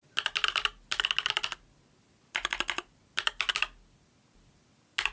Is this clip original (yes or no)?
yes